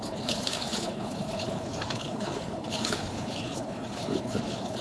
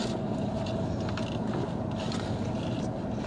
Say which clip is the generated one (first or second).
first